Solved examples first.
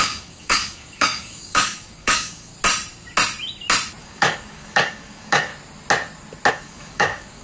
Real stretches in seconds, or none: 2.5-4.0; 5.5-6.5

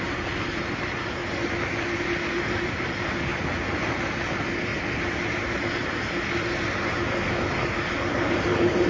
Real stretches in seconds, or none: 1.2-2.0; 3.3-3.9; 4.7-5.3; 5.8-8.3

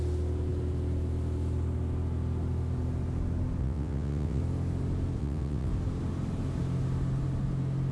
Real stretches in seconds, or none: 0.0-3.6; 4.4-5.2; 5.7-7.9

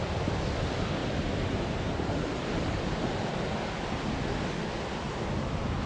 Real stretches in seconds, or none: none